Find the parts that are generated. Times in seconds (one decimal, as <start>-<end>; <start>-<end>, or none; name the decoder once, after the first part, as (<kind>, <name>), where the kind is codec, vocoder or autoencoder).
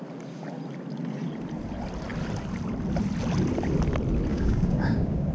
4.3-5.3 (codec, DAC)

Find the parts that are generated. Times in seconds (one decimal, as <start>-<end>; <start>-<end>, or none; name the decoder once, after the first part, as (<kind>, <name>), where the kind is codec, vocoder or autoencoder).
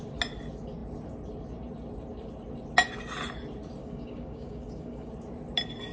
3.8-5.1 (codec, DAC)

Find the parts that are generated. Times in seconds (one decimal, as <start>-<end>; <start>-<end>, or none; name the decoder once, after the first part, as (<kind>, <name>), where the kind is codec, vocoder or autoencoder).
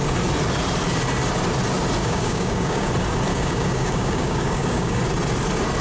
2.0-2.9 (codec, DAC); 3.3-5.0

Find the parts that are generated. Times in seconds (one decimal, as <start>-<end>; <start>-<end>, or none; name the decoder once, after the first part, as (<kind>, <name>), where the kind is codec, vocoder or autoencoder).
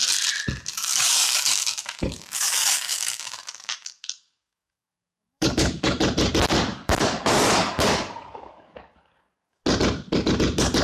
0.9-6.0 (codec, DAC); 6.7-9.6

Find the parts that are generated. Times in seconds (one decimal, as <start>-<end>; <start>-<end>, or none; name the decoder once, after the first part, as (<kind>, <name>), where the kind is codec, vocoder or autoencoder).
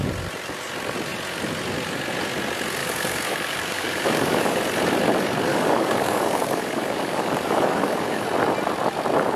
2.8-4.6 (codec, DAC); 5.5-8.2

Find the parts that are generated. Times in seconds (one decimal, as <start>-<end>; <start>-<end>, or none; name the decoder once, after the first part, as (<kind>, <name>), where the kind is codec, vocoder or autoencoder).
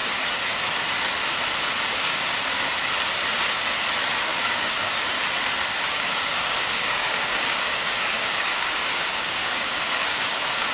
4.3-4.9 (codec, DAC); 5.9-10.7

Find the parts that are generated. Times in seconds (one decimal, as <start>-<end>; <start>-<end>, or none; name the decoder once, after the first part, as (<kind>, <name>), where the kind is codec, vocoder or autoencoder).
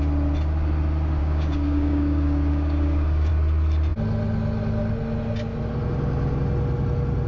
1.2-3.3 (codec, DAC)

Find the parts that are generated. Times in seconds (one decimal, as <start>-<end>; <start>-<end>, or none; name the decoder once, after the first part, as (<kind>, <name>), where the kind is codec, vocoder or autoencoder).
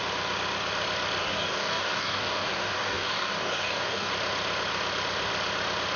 1.2-4.1 (codec, DAC)